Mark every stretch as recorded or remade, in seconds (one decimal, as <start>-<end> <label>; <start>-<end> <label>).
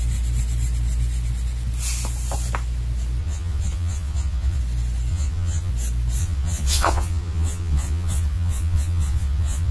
0.0-3.2 recorded; 3.2-4.6 remade; 4.6-5.1 recorded; 5.1-5.7 remade; 5.7-6.2 recorded; 6.2-9.7 remade